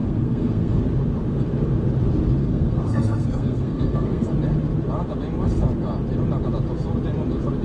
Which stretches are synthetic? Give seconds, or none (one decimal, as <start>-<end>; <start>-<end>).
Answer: 0.0-0.8; 2.4-4.3